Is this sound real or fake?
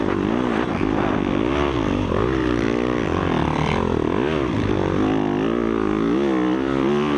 real